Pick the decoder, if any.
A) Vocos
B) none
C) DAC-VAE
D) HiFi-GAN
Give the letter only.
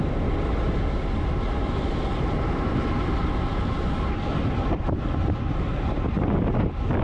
B